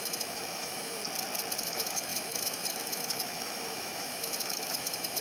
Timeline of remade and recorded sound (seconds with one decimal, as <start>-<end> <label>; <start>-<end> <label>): 0.0-1.0 remade; 1.0-1.6 recorded; 1.6-5.2 remade